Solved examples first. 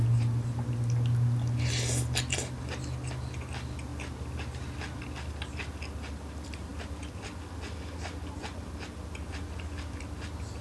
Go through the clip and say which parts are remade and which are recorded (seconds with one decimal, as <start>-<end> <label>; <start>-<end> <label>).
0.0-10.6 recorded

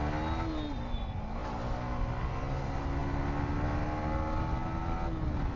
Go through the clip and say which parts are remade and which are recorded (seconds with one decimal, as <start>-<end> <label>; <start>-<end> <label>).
0.0-5.6 recorded

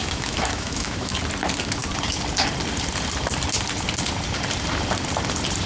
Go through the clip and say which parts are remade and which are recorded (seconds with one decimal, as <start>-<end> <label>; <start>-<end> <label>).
0.0-1.2 remade; 1.2-5.7 recorded

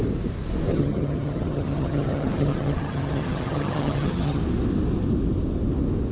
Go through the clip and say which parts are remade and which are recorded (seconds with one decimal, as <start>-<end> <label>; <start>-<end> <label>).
0.0-0.7 recorded; 0.7-4.4 remade; 4.4-6.1 recorded